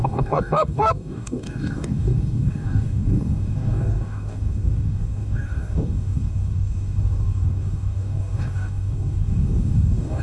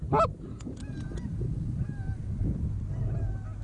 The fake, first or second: first